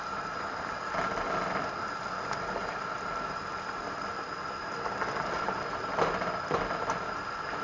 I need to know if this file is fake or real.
real